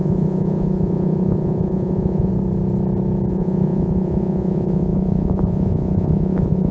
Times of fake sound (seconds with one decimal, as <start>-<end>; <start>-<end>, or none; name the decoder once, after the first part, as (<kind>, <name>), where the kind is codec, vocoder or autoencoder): 0.0-2.3 (vocoder, Vocos); 3.3-6.7